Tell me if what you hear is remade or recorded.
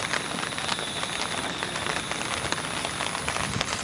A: recorded